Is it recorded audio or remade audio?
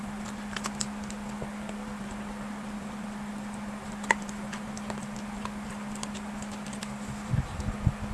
recorded